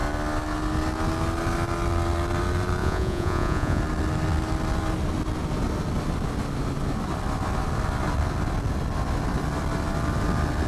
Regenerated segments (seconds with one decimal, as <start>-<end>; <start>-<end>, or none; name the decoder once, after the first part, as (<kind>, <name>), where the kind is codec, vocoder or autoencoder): 2.8-3.8 (vocoder, Vocos)

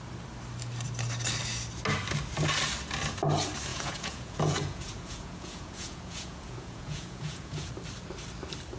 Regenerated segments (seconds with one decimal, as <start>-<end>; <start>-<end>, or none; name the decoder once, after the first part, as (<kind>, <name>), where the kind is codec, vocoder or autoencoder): 3.7-7.7 (vocoder, Vocos)

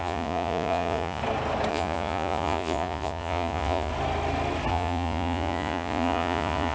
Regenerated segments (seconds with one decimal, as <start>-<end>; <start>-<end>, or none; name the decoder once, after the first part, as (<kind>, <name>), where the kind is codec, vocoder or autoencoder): 0.0-1.2 (vocoder, Vocos); 1.7-3.9; 4.7-6.7

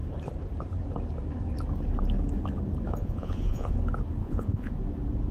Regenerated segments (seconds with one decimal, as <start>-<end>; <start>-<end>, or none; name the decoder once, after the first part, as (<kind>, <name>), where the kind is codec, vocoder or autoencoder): 3.0-3.8 (vocoder, Vocos); 4.2-4.7

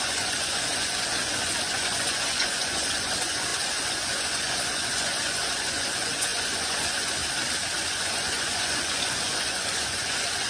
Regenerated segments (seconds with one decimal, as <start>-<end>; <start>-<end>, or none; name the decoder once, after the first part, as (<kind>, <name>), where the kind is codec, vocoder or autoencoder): 0.0-7.2 (vocoder, Vocos); 7.9-10.5

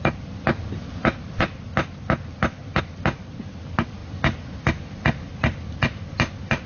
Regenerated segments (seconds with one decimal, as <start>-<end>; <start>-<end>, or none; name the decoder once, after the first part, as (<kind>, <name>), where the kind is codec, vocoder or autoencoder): none

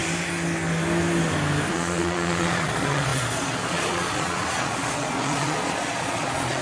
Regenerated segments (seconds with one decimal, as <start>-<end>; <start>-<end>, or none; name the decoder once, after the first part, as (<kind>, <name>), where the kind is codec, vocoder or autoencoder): 1.7-6.6 (vocoder, Vocos)